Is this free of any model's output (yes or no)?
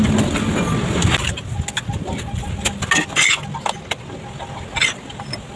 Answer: yes